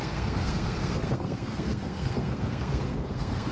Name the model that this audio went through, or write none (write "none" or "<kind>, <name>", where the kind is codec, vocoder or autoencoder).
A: codec, SNAC